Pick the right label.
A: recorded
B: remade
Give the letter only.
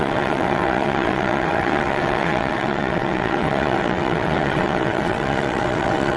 B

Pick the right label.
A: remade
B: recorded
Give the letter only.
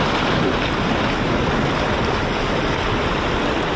B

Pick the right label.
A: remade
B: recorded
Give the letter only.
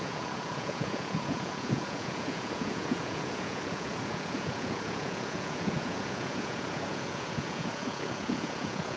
A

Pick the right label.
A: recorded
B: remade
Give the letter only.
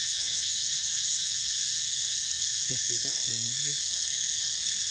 B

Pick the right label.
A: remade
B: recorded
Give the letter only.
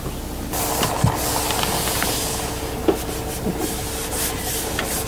B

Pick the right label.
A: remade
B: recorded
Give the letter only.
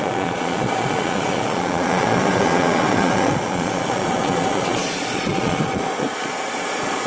A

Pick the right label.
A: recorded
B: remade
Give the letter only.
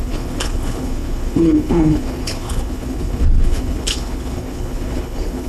B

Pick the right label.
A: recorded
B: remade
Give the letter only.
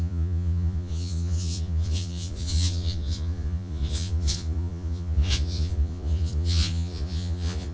B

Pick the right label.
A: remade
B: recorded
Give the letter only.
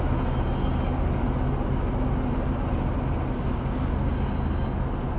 B